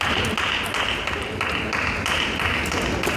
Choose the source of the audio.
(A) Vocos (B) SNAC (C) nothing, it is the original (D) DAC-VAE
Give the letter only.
C